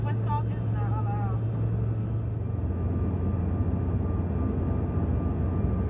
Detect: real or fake real